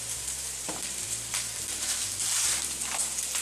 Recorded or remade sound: remade